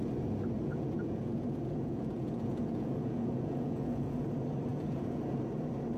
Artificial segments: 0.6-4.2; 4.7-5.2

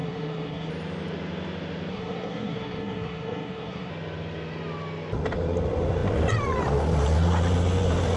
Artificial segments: 0.0-0.7; 1.9-3.9

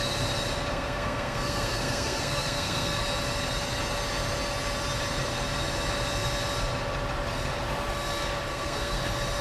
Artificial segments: 0.7-3.0; 8.5-9.0

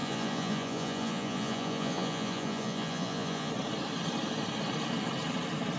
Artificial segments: 0.0-3.5

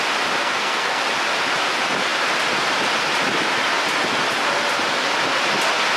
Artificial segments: 0.4-1.0

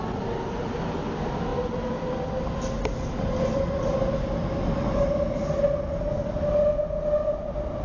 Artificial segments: none

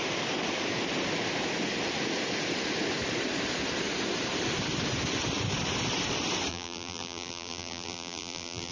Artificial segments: 6.5-8.7

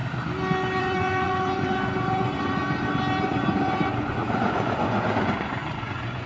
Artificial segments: 0.8-2.6; 3.2-6.3